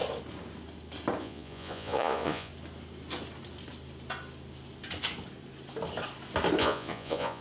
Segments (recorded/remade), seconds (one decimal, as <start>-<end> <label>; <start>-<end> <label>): 0.0-1.2 recorded; 1.2-2.5 remade; 2.5-6.6 recorded; 6.6-7.4 remade